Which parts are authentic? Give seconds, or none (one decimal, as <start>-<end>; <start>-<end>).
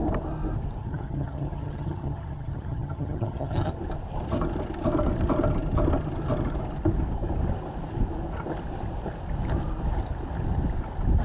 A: 0.0-0.8; 3.7-11.2